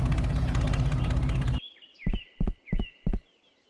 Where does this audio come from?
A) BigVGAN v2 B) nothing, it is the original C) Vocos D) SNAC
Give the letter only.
B